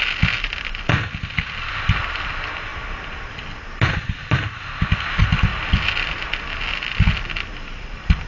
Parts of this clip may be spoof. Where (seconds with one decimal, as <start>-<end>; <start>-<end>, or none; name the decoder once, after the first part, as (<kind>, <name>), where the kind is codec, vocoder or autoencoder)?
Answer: none